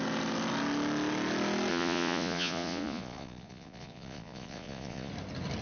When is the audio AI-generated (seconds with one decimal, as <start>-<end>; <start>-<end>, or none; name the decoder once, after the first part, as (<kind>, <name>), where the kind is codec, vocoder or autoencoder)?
1.7-5.1 (vocoder, Vocos)